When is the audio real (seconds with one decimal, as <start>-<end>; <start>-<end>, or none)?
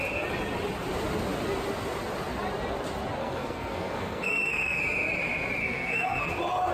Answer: 0.0-3.2; 4.8-5.6; 6.3-6.7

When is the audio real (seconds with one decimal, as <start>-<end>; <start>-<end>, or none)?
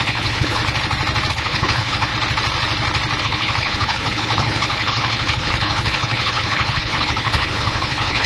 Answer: 0.6-1.3; 2.1-3.2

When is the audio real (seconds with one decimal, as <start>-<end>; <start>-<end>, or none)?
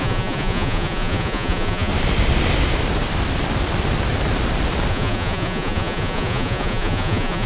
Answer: 1.9-4.9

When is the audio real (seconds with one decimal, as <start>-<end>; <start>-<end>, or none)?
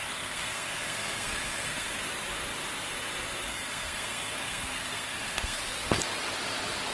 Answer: 1.9-3.5; 5.6-6.9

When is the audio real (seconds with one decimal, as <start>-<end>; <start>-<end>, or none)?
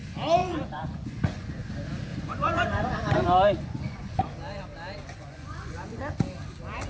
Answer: 0.0-0.4; 1.7-2.1; 4.2-5.0; 6.0-6.9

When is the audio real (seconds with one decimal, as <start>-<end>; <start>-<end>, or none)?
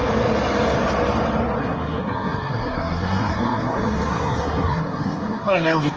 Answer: 0.0-1.6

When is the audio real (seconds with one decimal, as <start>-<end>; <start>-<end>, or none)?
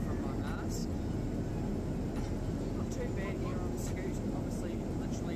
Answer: 0.0-0.8; 1.5-5.4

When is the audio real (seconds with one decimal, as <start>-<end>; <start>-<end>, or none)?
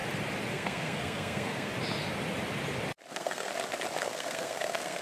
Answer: 0.0-0.5; 1.7-3.1; 3.5-4.0